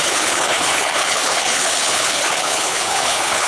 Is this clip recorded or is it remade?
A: remade